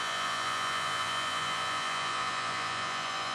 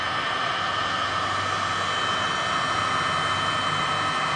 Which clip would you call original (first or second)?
second